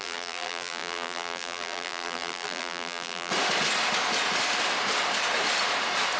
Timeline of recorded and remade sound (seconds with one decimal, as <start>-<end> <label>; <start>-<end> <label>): 0.0-3.3 remade; 3.3-6.2 recorded